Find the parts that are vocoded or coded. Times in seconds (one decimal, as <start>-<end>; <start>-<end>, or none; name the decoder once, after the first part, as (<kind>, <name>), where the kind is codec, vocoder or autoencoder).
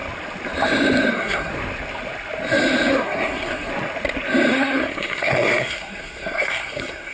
1.1-1.5 (codec, SNAC); 2.9-3.7; 4.5-7.1